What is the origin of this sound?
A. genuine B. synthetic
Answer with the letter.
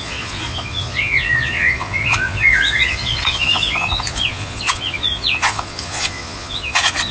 B